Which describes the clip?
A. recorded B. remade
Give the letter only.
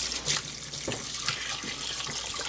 A